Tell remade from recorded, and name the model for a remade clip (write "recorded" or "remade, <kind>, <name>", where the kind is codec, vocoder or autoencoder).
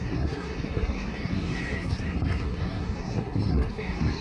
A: remade, codec, SNAC